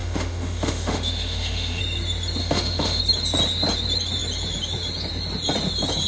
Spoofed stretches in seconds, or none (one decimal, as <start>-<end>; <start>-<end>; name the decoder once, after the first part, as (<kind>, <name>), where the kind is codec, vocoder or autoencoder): 0.0-1.8 (autoencoder, DAC-VAE); 2.4-3.0